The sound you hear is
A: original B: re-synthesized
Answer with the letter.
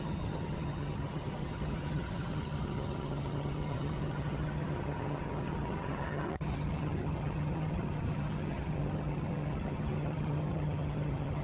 B